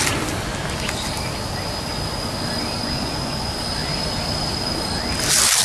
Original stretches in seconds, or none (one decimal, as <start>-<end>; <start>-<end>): 0.0-2.8; 3.5-5.6